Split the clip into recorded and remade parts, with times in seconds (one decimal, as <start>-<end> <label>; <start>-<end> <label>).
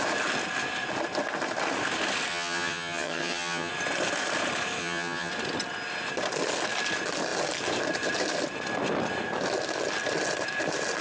0.0-2.3 recorded; 2.3-3.7 remade; 3.7-4.8 recorded; 4.8-5.3 remade; 5.3-11.0 recorded